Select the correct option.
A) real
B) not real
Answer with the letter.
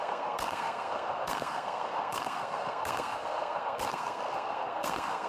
B